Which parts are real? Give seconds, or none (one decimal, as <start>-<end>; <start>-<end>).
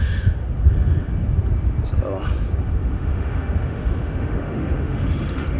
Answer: 0.4-2.6